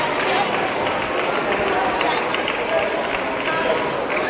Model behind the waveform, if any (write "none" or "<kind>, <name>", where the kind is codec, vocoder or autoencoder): none